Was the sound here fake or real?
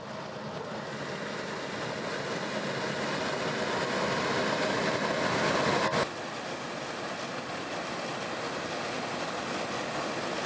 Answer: real